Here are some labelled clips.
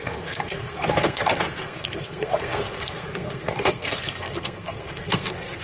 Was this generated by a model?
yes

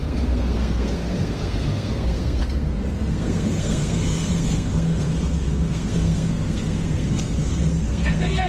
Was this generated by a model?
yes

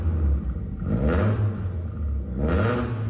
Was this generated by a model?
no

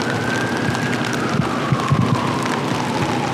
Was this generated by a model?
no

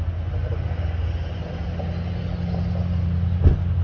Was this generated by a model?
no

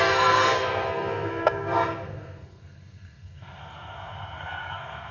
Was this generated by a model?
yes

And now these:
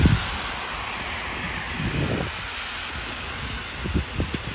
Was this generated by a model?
no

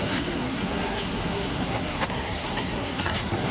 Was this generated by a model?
yes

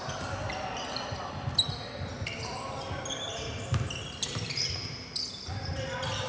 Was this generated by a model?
no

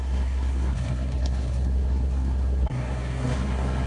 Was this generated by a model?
yes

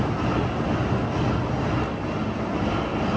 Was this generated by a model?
no